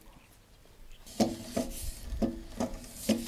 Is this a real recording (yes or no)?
yes